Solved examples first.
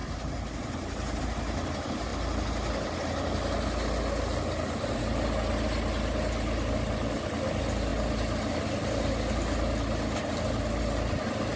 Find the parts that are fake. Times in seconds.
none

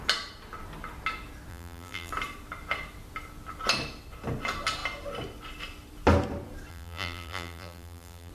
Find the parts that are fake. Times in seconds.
1.5-2.1 (vocoder, BigVGAN v2); 6.7-8.3